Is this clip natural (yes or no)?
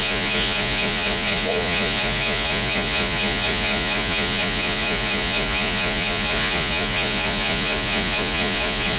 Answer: no